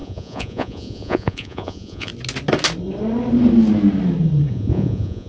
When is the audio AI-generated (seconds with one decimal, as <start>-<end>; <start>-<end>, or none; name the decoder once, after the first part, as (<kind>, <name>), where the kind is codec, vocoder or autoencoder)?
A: 0.0-2.1 (vocoder, Vocos); 4.5-5.3